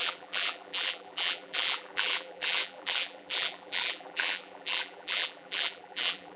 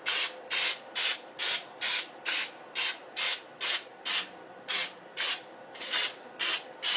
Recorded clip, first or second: second